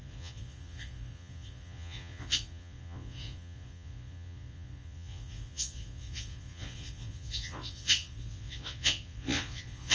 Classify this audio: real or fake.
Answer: fake